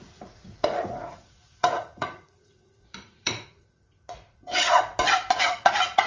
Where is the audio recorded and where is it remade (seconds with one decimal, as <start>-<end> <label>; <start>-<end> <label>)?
0.0-4.4 remade; 4.4-5.4 recorded; 5.4-6.1 remade